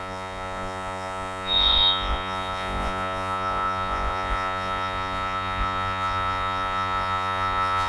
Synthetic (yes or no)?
yes